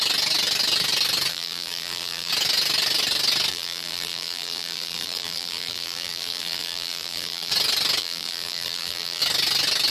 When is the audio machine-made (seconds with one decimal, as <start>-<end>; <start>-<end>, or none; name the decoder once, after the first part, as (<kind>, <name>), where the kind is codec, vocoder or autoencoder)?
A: 1.3-2.3 (vocoder, BigVGAN v2); 3.5-7.5; 8.0-9.2